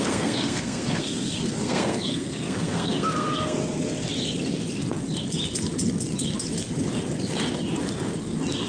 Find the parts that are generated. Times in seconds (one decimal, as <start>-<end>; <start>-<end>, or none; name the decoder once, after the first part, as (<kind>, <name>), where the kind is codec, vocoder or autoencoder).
0.0-3.6 (codec, SNAC)